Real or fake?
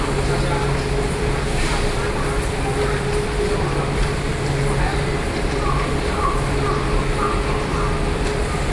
real